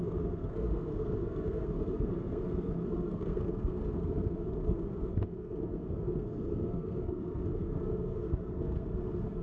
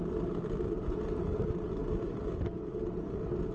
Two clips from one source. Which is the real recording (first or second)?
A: second